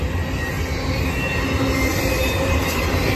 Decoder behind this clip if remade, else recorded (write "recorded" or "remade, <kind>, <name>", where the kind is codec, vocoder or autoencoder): recorded